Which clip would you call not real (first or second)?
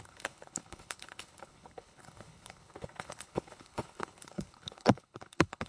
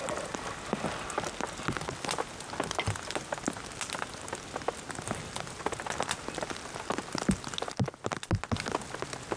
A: first